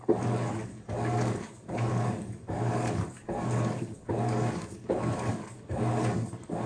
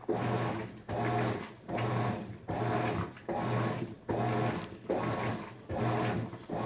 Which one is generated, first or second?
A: first